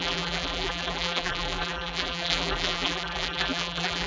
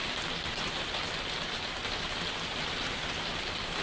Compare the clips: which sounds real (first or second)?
second